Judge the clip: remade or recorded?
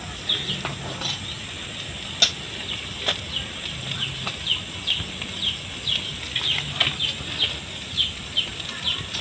recorded